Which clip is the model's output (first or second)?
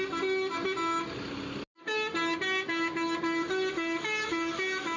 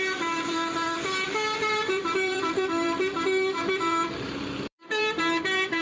second